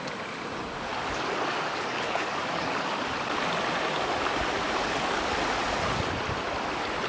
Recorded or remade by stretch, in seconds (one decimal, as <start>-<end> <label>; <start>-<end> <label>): 0.0-0.9 recorded; 0.9-3.0 remade; 3.0-4.8 recorded; 4.8-5.3 remade; 5.3-7.1 recorded